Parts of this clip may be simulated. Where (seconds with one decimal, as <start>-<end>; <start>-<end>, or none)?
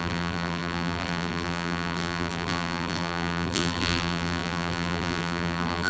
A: 0.0-5.9